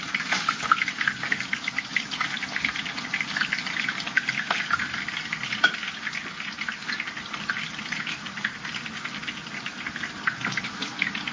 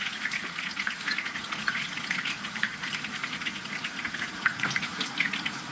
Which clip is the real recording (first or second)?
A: first